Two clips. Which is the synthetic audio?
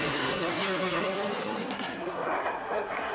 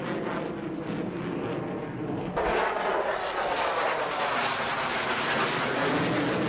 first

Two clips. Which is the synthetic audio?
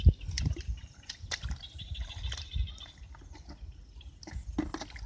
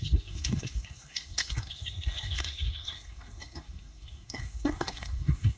second